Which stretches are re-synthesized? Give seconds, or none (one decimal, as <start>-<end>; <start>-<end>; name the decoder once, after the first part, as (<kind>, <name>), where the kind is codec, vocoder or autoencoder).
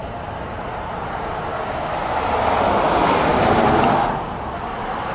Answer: 0.0-1.5 (vocoder, BigVGAN v2); 4.6-5.1